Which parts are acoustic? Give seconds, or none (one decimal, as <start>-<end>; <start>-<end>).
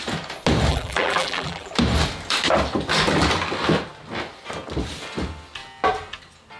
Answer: 0.0-0.7; 1.7-6.6